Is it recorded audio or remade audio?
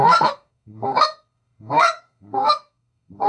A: remade